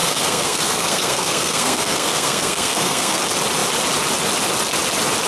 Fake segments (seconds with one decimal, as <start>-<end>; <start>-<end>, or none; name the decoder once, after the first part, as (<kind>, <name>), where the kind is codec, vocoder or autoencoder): 0.0-3.2 (codec, SNAC)